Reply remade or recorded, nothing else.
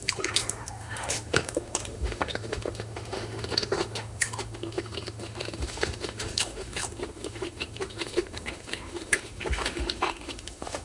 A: remade